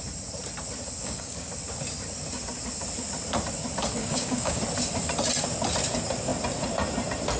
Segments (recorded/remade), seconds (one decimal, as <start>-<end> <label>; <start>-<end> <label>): 0.0-1.0 recorded; 1.0-1.5 remade; 1.5-4.0 recorded; 4.0-4.6 remade; 4.6-7.4 recorded